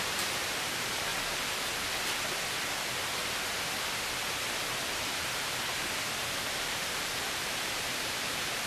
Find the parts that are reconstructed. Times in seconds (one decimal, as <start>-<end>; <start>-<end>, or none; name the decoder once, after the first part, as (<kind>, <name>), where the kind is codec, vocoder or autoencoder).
0.0-1.1 (vocoder, BigVGAN v2); 6.0-8.7